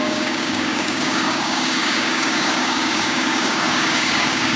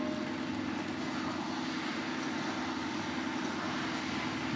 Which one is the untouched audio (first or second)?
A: second